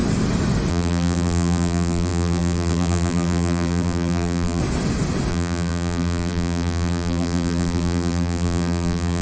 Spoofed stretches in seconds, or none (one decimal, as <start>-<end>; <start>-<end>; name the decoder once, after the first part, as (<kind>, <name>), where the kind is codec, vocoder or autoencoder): 0.7-4.6 (vocoder, BigVGAN v2); 5.3-9.2